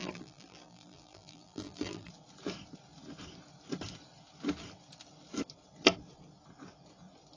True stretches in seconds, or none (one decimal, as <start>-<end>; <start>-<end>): 2.1-7.4